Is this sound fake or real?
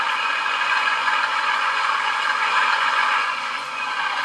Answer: fake